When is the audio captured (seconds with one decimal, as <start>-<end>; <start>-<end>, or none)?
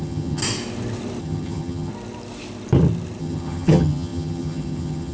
0.4-1.2; 1.9-3.2